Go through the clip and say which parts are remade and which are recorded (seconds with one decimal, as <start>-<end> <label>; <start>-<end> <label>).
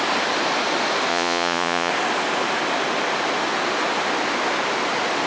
0.0-1.1 recorded; 1.1-1.9 remade; 1.9-5.3 recorded